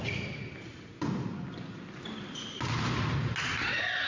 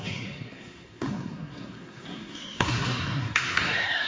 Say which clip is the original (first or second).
first